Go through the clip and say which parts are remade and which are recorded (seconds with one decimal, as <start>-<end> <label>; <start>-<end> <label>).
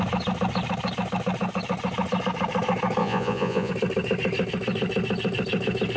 0.0-3.0 recorded; 3.0-3.7 remade; 3.7-6.0 recorded